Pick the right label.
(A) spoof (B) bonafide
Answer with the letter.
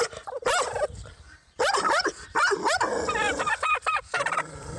A